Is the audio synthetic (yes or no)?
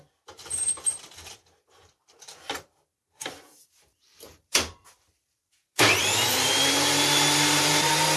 yes